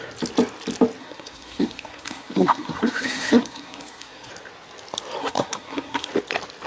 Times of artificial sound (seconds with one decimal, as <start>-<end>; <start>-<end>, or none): 1.0-4.3; 5.2-6.1